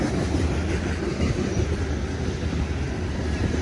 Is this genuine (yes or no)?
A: yes